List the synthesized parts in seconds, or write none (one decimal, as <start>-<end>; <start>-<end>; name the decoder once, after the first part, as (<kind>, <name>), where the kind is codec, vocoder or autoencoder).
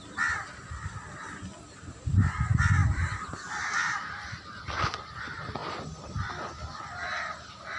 2.8-3.5 (vocoder, BigVGAN v2)